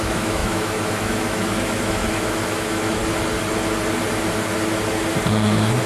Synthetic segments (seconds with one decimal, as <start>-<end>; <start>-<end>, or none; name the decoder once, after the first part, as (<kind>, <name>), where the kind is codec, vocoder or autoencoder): 0.0-3.0 (autoencoder, DAC-VAE); 5.3-5.9